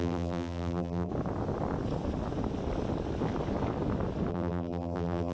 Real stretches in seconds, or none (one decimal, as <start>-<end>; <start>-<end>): 1.1-4.3